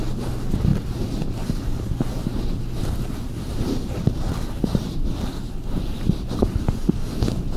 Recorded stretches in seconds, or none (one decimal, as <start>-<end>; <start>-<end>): 0.0-0.7; 1.9-2.8; 6.9-7.6